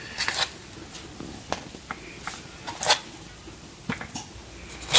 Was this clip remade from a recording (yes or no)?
no